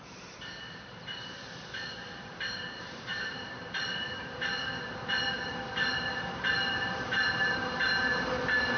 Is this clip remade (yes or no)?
yes